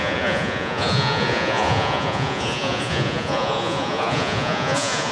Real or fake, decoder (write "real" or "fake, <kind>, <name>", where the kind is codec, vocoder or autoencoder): fake, vocoder, Vocos